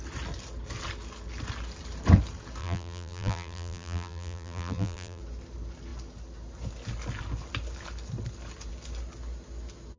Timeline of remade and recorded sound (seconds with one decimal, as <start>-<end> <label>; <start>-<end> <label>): 0.0-2.6 recorded; 2.6-5.2 remade; 5.2-10.0 recorded